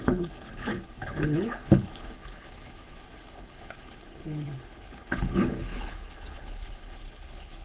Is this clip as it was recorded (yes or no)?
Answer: no